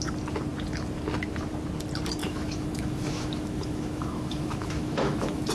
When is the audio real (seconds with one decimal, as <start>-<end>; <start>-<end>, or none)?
0.0-2.2